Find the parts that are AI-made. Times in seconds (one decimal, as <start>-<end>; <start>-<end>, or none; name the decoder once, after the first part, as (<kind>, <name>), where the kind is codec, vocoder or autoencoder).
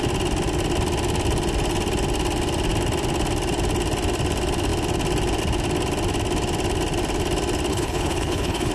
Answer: 7.7-8.7 (codec, HILCodec)